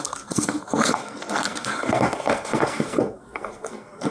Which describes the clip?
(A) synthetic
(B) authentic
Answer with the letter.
A